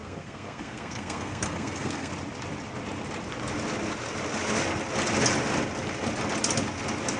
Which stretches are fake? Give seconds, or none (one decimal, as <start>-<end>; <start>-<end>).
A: 0.0-2.1

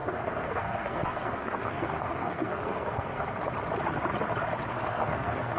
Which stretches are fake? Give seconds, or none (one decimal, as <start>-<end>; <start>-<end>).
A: 0.0-3.4; 4.7-5.6

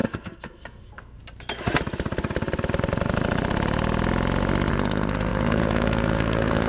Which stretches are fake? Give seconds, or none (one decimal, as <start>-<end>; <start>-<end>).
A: 0.0-1.2; 4.7-6.7